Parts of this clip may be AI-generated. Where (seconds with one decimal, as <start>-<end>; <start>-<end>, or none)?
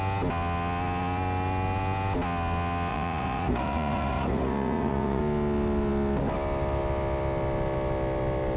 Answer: 2.9-5.2